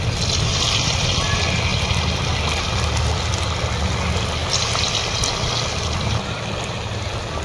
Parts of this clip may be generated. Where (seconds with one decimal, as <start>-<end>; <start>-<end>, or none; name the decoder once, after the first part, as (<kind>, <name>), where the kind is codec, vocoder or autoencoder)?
none